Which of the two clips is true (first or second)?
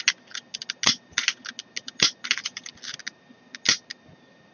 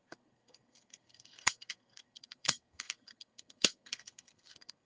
first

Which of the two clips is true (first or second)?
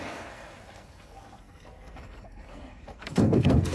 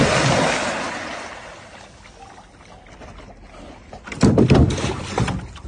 second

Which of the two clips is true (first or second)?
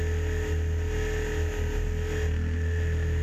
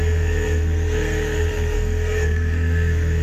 first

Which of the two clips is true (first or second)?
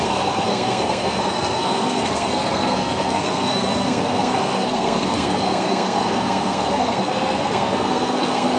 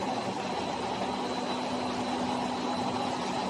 second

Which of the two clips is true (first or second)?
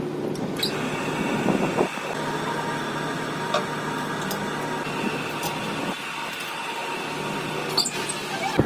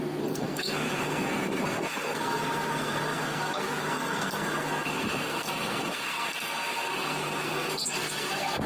first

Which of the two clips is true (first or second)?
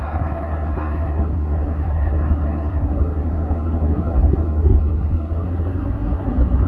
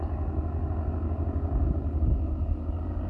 second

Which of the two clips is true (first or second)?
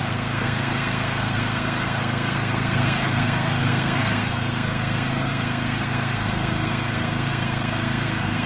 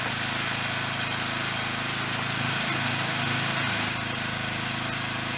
second